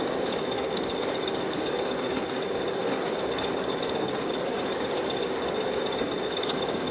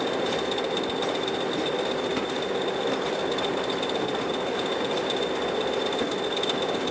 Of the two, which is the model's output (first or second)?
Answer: first